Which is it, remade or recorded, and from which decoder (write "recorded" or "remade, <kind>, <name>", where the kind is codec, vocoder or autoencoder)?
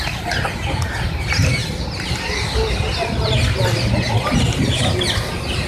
recorded